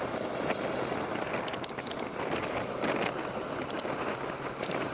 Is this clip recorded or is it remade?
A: recorded